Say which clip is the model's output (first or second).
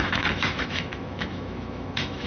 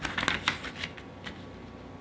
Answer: first